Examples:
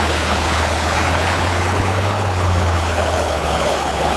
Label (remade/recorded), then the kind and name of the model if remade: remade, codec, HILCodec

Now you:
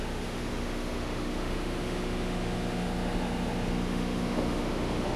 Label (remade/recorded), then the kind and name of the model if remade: remade, autoencoder, DAC-VAE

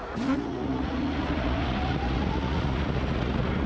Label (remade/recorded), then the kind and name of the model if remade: remade, vocoder, Vocos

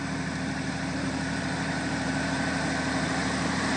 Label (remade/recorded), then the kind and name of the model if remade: remade, vocoder, BigVGAN v2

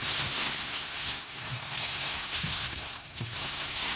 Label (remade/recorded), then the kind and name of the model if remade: remade, codec, SNAC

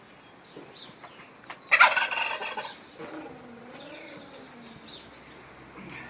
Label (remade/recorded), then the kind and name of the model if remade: recorded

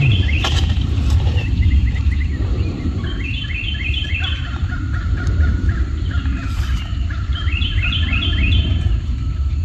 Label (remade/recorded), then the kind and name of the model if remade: remade, vocoder, BigVGAN v2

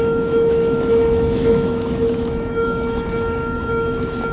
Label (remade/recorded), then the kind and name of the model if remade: remade, autoencoder, DAC-VAE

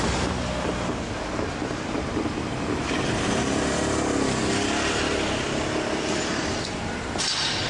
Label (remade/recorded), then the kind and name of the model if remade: recorded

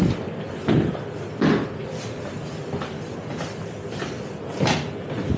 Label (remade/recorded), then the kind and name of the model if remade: recorded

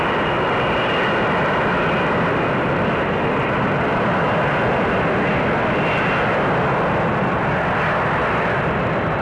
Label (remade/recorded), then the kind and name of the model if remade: recorded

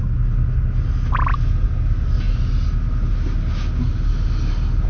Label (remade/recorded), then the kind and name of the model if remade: recorded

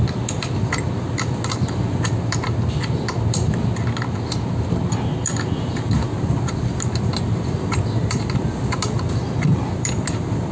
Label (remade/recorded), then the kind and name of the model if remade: recorded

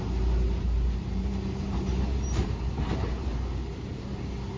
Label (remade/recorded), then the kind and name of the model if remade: remade, vocoder, BigVGAN v2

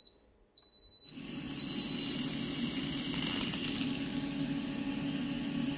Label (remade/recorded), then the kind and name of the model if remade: recorded